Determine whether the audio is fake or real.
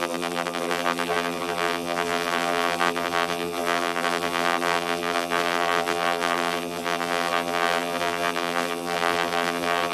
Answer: fake